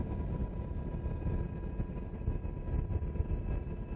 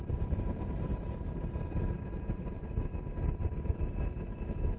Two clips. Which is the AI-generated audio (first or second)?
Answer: second